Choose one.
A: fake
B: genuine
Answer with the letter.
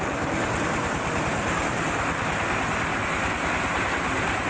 B